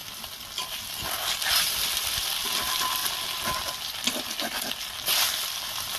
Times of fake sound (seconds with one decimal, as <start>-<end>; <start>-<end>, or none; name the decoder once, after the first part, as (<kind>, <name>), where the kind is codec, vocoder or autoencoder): 0.0-3.0 (vocoder, BigVGAN v2); 4.6-6.0